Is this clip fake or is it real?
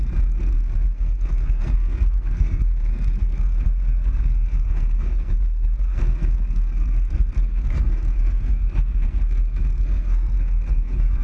fake